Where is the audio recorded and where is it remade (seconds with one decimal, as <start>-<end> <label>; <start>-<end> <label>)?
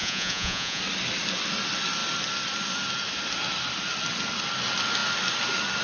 0.0-0.8 remade; 0.8-5.8 recorded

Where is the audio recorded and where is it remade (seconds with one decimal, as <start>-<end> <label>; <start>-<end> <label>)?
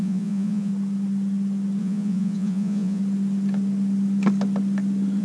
0.0-0.7 remade; 0.7-1.8 recorded; 1.8-3.0 remade; 3.0-5.2 recorded